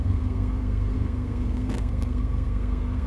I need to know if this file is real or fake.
fake